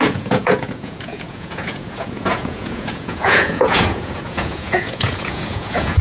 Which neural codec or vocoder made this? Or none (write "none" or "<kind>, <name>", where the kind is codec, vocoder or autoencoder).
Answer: vocoder, Vocos